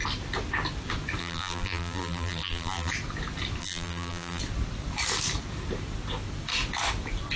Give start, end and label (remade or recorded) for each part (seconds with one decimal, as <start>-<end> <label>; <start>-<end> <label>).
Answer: 0.0-1.2 recorded; 1.2-2.9 remade; 2.9-3.6 recorded; 3.6-4.4 remade; 4.4-7.4 recorded